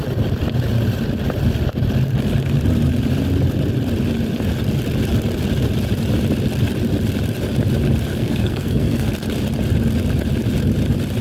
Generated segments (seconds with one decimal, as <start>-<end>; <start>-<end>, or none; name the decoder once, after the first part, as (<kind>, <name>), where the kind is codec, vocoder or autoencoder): 8.1-9.1 (codec, SNAC)